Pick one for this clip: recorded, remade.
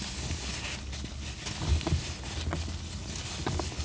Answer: recorded